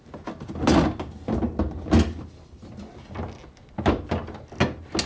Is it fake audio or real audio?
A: real